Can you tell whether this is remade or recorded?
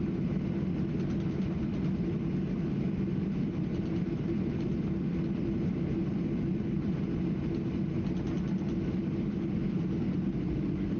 recorded